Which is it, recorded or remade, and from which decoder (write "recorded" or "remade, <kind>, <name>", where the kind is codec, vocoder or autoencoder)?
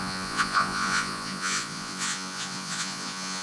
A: remade, vocoder, Vocos